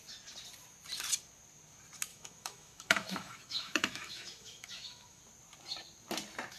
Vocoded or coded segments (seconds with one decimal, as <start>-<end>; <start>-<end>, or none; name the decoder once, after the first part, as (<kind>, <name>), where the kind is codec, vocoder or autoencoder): 2.1-5.2 (autoencoder, DAC-VAE)